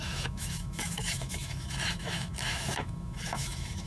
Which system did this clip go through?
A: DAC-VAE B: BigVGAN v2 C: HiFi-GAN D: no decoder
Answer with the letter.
A